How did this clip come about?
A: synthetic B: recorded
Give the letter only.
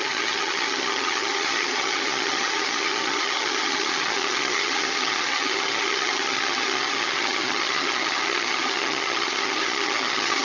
A